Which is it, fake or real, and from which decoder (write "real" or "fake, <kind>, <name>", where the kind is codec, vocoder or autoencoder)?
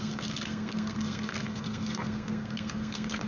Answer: fake, codec, SNAC